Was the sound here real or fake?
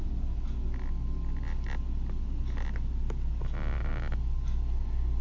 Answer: real